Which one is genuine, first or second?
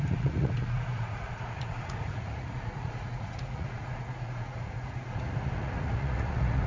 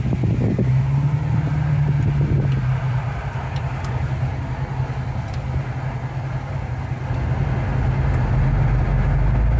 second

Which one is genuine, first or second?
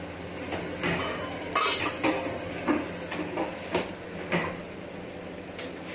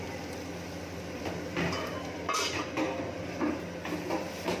first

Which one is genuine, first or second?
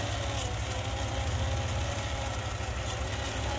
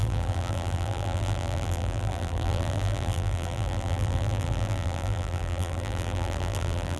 first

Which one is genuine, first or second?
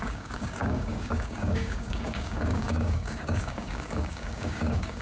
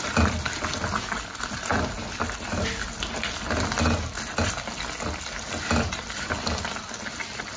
second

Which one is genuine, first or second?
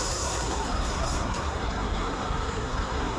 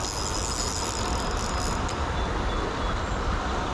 second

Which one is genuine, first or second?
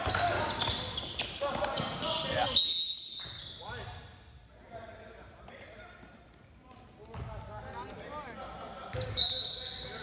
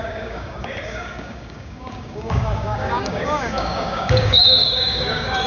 first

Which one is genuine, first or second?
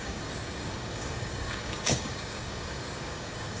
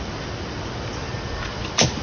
second